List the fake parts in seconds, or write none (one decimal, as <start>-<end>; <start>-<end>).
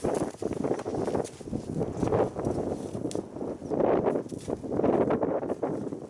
none